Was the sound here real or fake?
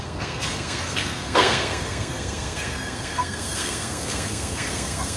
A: fake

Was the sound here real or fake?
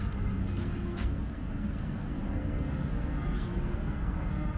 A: fake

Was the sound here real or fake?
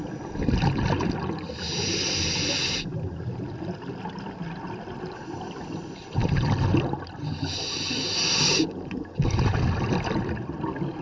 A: real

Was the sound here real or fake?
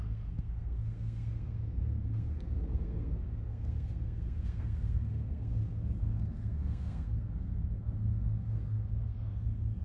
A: fake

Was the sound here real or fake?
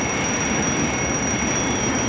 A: real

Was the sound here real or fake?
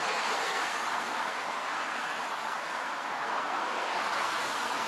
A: fake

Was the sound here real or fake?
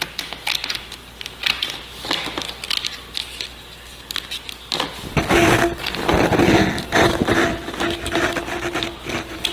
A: real